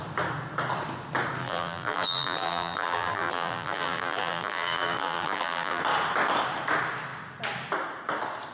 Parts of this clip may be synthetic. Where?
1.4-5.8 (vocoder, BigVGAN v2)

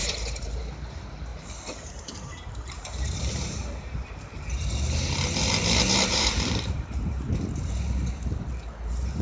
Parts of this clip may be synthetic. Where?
0.0-0.6 (vocoder, BigVGAN v2); 1.3-4.2; 6.1-7.3

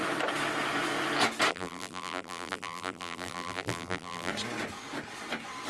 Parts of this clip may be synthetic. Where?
1.5-4.3 (vocoder, BigVGAN v2)

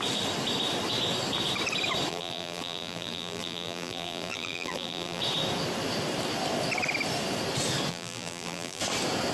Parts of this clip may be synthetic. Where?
2.1-5.2 (vocoder, BigVGAN v2); 7.9-8.8

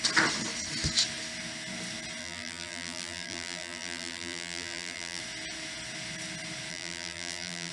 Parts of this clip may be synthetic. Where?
2.2-5.2 (vocoder, BigVGAN v2); 6.7-7.7

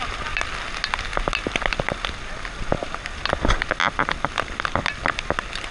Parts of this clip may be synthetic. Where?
none

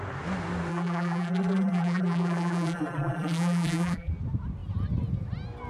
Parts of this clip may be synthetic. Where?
0.7-4.1 (vocoder, BigVGAN v2)

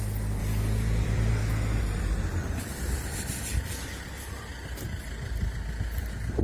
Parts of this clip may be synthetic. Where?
0.4-1.3 (vocoder, BigVGAN v2); 1.8-5.6